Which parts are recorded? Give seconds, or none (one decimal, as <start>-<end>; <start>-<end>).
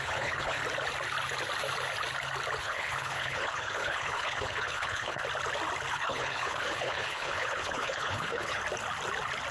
0.6-2.6; 5.2-5.9; 8.6-9.5